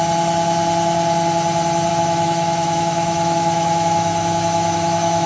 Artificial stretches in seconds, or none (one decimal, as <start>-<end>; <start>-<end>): 1.9-5.3